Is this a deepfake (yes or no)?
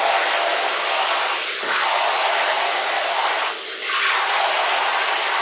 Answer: no